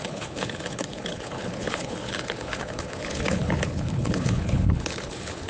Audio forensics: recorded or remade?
remade